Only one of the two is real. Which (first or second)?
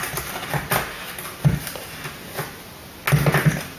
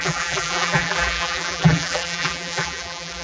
first